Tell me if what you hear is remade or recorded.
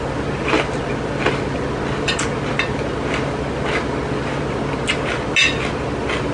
recorded